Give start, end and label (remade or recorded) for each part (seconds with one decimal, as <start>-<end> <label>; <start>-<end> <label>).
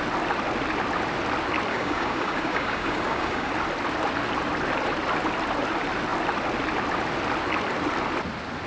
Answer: 0.0-1.7 recorded; 1.7-3.5 remade; 3.5-8.7 recorded